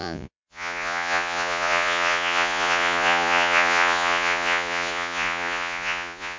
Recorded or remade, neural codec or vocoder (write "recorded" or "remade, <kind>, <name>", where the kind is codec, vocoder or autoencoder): remade, vocoder, Vocos